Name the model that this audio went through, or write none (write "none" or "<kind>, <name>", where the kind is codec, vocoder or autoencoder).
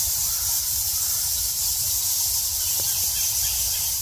vocoder, BigVGAN v2